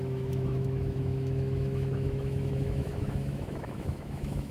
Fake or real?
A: fake